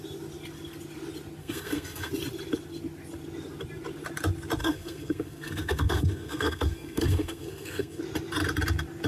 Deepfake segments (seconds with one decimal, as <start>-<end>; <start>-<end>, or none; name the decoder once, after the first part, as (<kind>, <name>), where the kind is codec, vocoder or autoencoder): 1.4-2.1 (codec, SNAC); 4.6-8.0